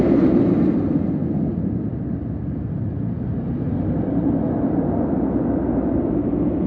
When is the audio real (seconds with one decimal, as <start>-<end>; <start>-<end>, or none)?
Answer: 0.0-6.7